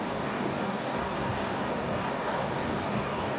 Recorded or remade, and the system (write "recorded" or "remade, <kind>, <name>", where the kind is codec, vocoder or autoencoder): remade, codec, DAC